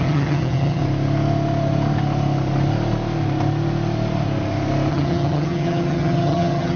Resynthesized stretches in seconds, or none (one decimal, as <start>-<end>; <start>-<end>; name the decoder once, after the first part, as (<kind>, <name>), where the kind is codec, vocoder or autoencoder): 0.0-0.8 (vocoder, HiFi-GAN); 4.9-6.8